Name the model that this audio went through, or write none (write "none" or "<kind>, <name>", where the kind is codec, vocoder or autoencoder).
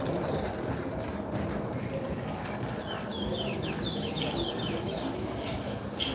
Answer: none